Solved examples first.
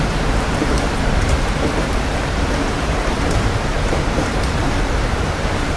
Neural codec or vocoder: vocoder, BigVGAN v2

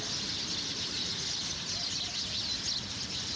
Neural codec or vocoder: none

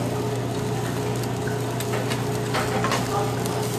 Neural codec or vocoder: none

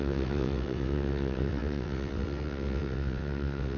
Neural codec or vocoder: vocoder, WaveNeXt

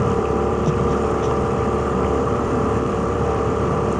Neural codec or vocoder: vocoder, BigVGAN v2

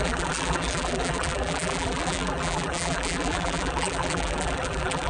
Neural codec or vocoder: vocoder, BigVGAN v2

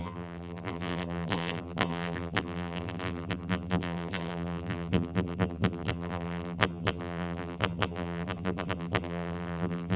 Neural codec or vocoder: vocoder, BigVGAN v2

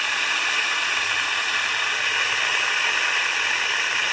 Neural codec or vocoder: none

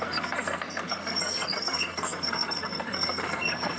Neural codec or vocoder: codec, SNAC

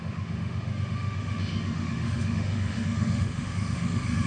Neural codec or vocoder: autoencoder, DAC-VAE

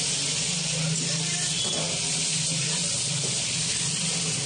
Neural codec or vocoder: none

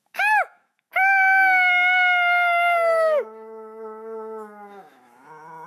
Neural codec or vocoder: autoencoder, DAC-VAE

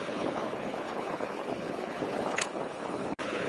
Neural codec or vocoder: codec, HILCodec